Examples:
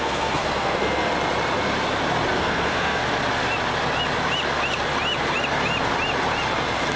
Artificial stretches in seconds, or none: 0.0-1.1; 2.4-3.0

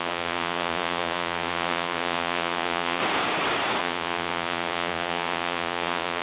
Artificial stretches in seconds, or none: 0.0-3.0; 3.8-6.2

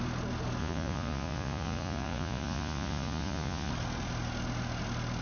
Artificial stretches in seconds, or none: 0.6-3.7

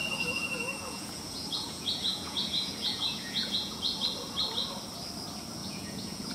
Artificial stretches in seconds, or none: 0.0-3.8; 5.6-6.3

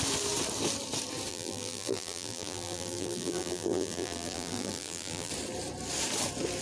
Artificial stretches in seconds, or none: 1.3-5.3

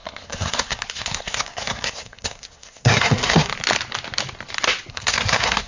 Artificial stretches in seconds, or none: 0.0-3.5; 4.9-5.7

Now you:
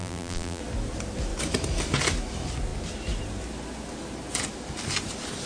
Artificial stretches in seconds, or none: 0.0-0.6